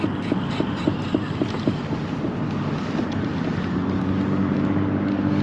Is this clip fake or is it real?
real